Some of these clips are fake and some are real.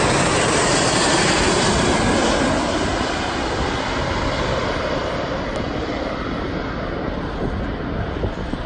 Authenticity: real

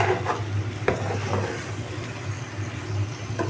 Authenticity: real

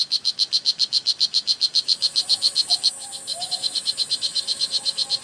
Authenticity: fake